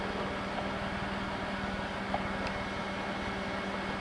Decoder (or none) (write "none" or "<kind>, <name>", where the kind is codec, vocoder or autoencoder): none